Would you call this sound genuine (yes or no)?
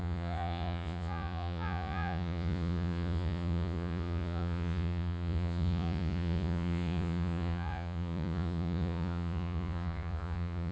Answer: no